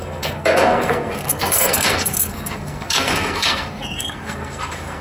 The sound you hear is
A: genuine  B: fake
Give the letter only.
B